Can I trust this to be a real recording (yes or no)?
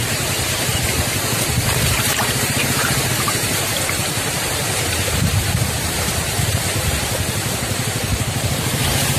no